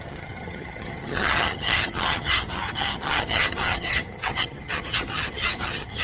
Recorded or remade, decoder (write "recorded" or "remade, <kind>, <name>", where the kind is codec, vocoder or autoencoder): remade, vocoder, HiFi-GAN